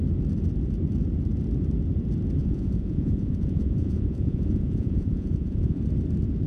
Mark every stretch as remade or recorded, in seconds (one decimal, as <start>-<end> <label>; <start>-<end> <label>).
0.0-2.4 recorded; 2.4-5.8 remade; 5.8-6.5 recorded